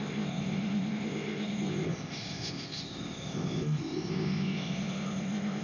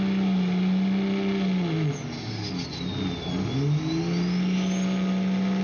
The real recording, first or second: second